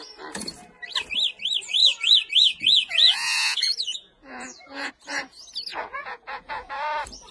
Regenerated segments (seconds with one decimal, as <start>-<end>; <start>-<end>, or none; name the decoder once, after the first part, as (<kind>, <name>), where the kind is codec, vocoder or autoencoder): 1.8-4.9 (vocoder, Vocos); 5.7-6.7